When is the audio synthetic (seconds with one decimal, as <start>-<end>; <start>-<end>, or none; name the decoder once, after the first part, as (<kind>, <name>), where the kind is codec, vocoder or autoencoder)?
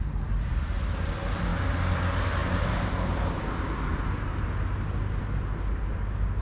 0.5-1.1 (vocoder, BigVGAN v2); 1.5-2.0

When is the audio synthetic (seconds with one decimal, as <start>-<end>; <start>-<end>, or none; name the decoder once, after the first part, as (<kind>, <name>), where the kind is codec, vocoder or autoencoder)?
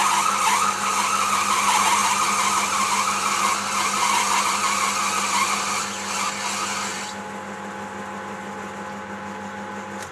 none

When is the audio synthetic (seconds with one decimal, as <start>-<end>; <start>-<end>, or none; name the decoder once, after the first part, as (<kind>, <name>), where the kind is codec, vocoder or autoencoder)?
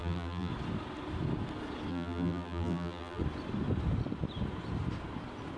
0.0-0.5 (vocoder, BigVGAN v2); 1.9-3.2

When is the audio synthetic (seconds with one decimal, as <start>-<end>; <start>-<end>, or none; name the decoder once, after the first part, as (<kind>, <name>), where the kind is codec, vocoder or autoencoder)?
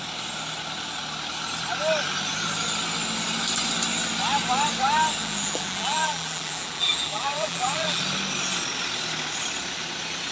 5.2-8.0 (vocoder, BigVGAN v2)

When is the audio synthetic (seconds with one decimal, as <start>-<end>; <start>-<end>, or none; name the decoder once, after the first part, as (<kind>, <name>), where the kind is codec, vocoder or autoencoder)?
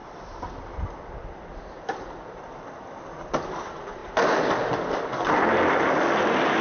0.0-4.0 (vocoder, BigVGAN v2); 4.7-6.6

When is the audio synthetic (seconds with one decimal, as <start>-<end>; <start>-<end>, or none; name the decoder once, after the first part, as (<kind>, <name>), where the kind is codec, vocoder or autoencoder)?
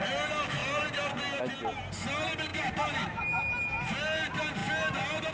none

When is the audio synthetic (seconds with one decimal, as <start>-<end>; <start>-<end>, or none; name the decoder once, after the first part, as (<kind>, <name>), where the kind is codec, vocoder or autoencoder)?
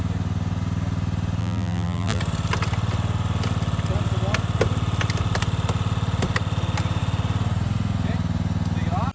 1.4-2.2 (vocoder, BigVGAN v2)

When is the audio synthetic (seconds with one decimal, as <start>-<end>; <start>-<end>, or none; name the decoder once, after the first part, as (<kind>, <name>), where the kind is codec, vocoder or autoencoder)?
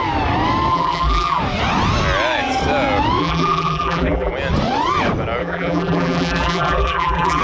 0.7-1.4 (vocoder, BigVGAN v2); 3.2-4.3; 5.4-7.4